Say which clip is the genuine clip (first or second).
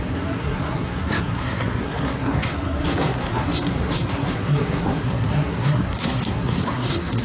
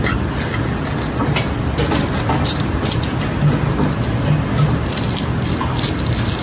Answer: second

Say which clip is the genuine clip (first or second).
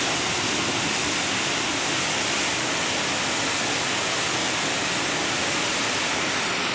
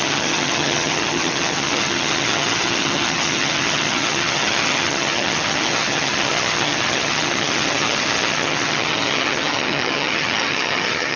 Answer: first